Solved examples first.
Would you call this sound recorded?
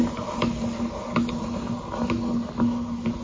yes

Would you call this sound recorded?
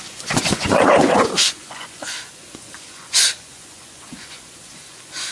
no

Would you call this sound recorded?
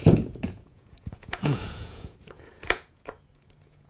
no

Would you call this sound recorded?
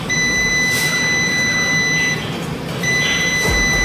no